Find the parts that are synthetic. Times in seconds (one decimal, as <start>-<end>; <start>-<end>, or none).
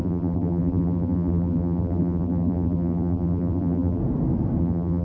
0.0-4.0; 4.6-5.0